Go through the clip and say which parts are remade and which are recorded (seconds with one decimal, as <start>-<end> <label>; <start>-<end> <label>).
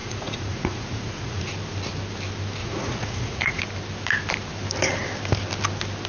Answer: 0.0-1.5 remade; 1.5-2.6 recorded; 2.6-3.6 remade; 3.6-6.1 recorded